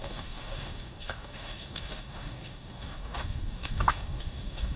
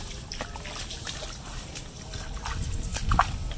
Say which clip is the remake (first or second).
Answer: first